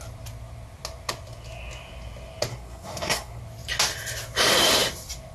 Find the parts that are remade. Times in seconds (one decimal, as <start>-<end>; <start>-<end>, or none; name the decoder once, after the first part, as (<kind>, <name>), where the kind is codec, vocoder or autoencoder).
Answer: 2.5-3.4 (codec, SNAC)